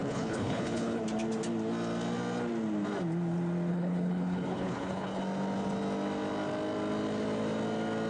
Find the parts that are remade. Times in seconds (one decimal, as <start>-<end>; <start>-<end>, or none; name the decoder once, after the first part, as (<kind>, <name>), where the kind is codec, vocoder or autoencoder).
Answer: 0.0-1.0 (codec, HILCodec); 3.7-5.2

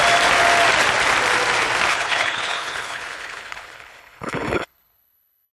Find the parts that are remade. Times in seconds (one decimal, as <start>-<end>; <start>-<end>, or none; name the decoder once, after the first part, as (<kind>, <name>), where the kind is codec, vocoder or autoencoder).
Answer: 1.9-5.5 (codec, HILCodec)

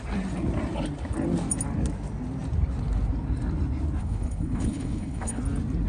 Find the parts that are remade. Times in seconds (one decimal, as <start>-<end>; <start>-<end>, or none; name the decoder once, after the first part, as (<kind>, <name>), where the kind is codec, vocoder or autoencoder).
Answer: 4.0-5.4 (codec, HILCodec)

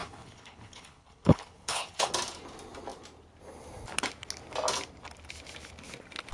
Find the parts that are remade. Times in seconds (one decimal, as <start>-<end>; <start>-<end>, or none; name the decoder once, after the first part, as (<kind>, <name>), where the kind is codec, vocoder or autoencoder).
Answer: 0.0-2.1 (codec, HILCodec)

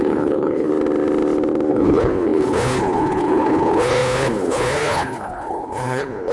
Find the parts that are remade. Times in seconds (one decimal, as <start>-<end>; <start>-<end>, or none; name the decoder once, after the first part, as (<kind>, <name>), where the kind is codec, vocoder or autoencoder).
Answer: 0.0-0.7 (codec, HILCodec); 1.7-6.3

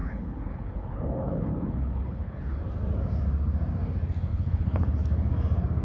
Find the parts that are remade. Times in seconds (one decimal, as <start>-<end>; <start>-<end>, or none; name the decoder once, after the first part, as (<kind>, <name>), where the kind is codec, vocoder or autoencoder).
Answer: 0.0-2.6 (codec, HILCodec); 4.3-5.0